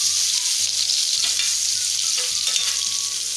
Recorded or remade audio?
recorded